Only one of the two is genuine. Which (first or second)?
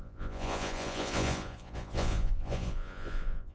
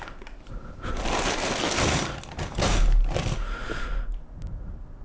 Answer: second